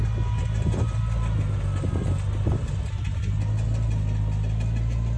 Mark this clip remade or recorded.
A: recorded